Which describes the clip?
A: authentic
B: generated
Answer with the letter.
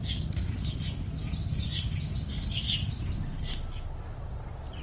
A